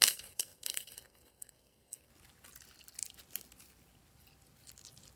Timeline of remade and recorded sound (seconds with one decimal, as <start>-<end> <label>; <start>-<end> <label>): 0.0-2.1 remade; 2.1-5.2 recorded